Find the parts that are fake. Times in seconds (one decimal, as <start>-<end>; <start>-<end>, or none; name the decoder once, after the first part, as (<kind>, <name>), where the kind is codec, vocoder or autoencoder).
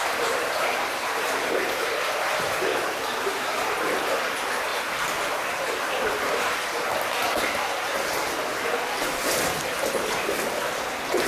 0.0-2.7 (vocoder, BigVGAN v2); 3.3-4.7; 9.0-11.3